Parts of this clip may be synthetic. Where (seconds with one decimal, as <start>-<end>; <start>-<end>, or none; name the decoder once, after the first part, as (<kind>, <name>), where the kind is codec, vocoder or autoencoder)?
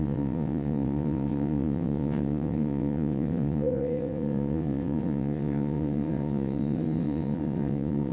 0.0-8.1 (vocoder, WaveNeXt)